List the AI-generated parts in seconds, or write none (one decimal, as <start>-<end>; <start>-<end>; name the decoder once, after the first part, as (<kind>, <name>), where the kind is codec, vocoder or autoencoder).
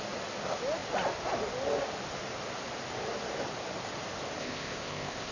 4.4-5.3 (codec, ZipCodec)